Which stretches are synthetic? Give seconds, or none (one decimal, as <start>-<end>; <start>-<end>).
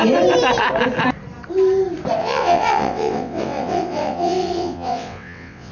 2.2-5.7